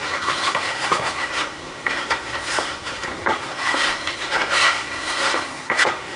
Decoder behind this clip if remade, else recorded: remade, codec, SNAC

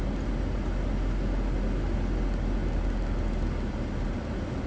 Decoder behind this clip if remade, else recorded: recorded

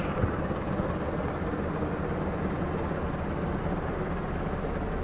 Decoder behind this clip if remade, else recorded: recorded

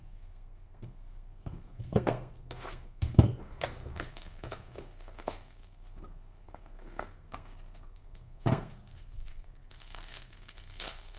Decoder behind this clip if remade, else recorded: remade, codec, SNAC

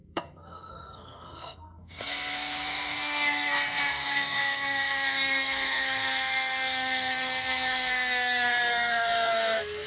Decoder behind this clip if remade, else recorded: remade, codec, SNAC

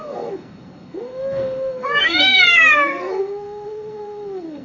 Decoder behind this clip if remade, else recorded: remade, codec, SNAC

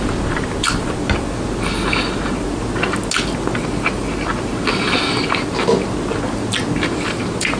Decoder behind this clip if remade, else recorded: recorded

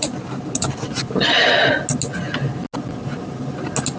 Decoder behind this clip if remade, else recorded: recorded